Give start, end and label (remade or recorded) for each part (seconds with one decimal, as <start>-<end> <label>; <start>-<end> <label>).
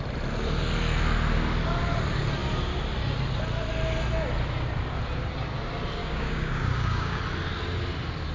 0.0-6.0 recorded; 6.0-7.2 remade; 7.2-8.3 recorded